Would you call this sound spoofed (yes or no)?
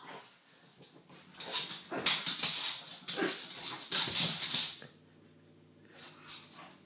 no